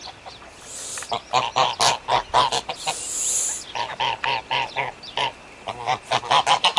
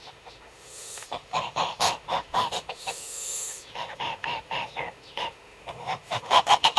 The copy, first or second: second